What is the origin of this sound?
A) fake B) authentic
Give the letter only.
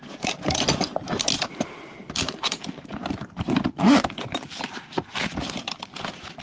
A